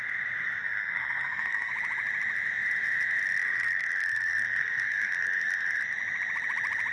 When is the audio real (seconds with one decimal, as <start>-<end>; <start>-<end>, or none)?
0.0-0.6; 1.7-3.4; 5.8-6.9